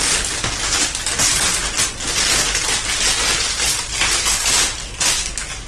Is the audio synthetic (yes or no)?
no